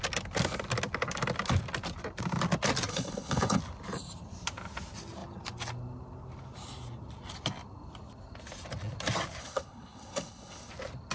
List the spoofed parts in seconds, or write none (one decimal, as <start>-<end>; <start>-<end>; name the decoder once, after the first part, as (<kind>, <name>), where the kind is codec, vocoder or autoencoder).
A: 2.9-3.6 (codec, HILCodec); 9.4-10.7